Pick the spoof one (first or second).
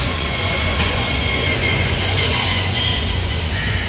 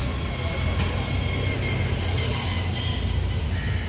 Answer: first